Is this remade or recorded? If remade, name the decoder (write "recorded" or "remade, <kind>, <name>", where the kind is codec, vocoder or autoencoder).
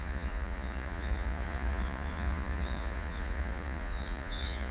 remade, vocoder, Vocos